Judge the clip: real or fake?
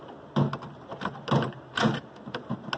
real